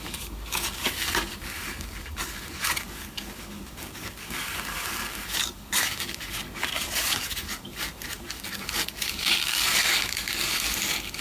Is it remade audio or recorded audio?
remade